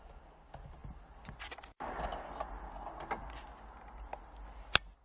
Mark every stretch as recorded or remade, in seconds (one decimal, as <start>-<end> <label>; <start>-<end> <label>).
0.0-5.0 recorded